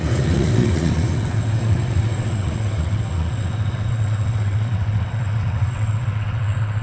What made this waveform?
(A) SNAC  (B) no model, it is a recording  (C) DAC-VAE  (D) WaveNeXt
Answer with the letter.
D